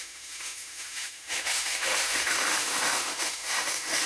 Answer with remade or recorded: remade